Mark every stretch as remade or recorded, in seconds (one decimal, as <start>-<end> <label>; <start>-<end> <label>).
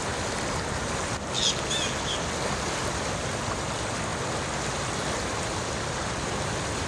0.0-6.9 recorded